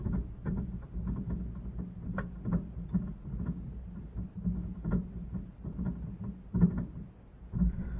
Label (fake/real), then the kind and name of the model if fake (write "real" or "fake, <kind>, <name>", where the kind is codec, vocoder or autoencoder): real